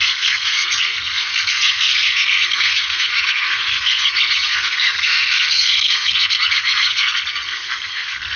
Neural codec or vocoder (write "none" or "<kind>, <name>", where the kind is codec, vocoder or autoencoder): codec, SNAC